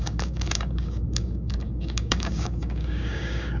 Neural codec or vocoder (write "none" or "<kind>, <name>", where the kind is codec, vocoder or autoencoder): codec, DAC